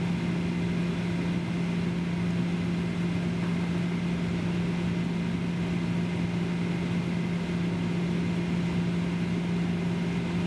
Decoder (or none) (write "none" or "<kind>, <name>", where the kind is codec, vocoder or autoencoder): none